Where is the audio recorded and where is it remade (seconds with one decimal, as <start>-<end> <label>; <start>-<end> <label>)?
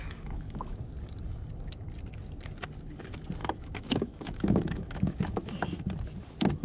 0.0-0.8 remade; 0.8-3.4 recorded; 3.4-5.8 remade; 5.8-6.6 recorded